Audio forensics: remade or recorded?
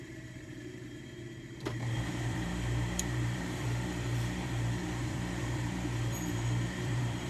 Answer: remade